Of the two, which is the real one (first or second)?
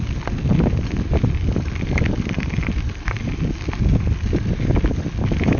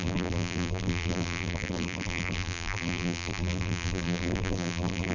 first